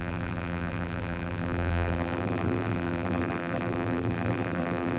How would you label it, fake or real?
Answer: fake